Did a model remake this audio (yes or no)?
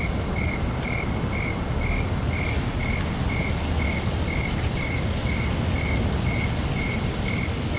no